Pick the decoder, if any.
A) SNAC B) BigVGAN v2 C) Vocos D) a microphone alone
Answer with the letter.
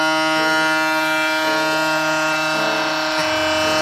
D